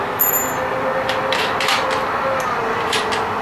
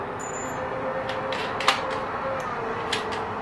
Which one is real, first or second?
second